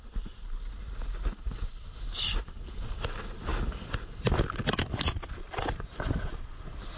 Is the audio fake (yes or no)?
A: yes